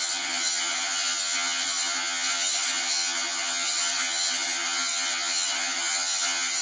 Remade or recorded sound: remade